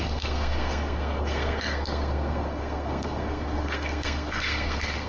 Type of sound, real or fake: fake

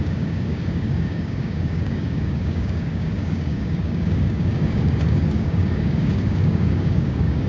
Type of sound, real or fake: fake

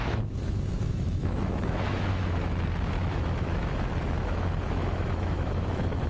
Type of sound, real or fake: fake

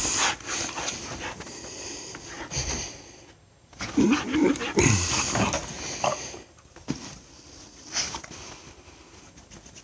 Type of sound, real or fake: real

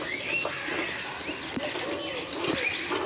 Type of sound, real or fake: real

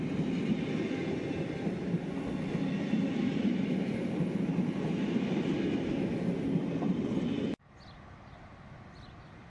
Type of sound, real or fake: real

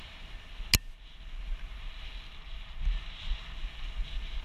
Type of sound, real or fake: real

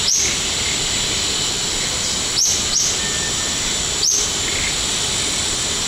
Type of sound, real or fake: real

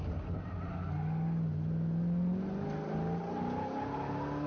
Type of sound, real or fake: real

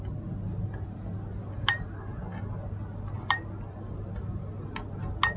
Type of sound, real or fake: real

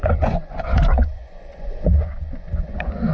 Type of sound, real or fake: fake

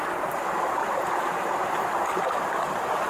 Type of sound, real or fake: real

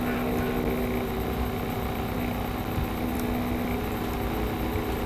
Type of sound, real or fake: real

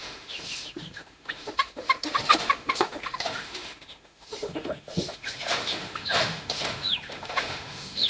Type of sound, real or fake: fake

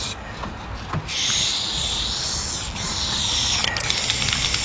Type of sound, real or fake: real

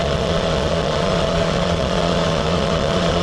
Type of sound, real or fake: fake